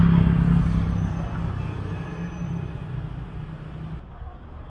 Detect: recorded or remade recorded